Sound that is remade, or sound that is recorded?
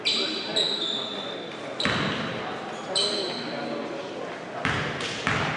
recorded